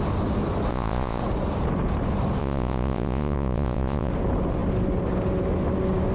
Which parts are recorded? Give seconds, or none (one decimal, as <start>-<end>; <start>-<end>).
0.0-0.7; 1.2-2.4; 4.1-6.1